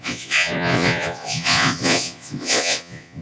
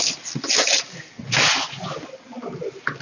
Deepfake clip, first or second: first